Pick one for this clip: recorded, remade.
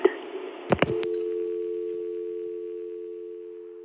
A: recorded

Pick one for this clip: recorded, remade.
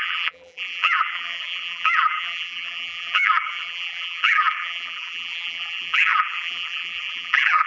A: remade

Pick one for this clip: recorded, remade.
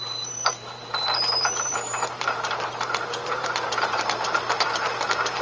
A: remade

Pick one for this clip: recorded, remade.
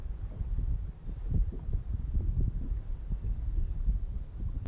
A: recorded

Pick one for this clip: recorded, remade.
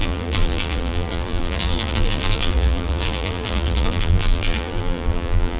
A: remade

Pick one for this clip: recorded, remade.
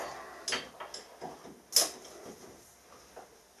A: recorded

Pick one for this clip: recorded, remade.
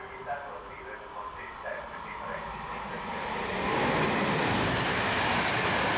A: recorded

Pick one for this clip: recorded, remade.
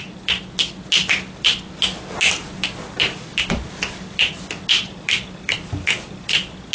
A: recorded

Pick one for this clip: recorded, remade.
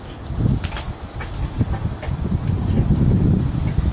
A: recorded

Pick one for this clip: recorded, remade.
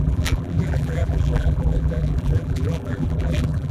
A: remade